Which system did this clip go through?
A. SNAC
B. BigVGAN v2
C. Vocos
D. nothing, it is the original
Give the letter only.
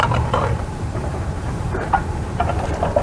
B